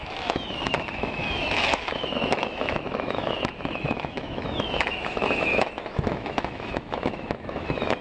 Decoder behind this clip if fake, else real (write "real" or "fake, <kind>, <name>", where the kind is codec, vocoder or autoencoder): fake, autoencoder, DAC-VAE